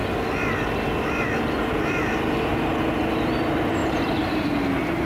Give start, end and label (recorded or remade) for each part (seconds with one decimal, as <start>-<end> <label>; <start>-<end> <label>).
0.0-3.8 recorded; 3.8-4.4 remade; 4.4-5.1 recorded